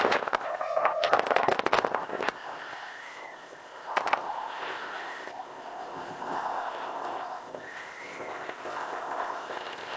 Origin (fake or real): fake